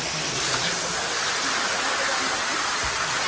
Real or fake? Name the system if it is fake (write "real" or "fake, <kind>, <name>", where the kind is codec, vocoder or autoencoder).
real